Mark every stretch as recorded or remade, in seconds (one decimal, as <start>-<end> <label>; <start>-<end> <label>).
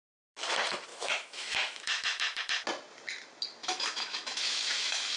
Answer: 0.0-0.9 recorded; 0.9-2.4 remade; 2.4-3.6 recorded; 3.6-5.2 remade